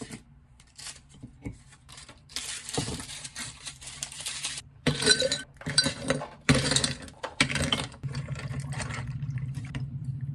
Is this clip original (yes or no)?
no